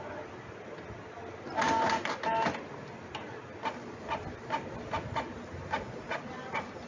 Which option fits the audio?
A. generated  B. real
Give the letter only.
B